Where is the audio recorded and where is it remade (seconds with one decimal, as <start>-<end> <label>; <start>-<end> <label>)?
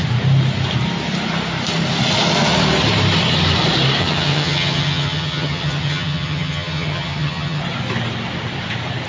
0.0-4.0 recorded; 4.0-7.6 remade; 7.6-9.1 recorded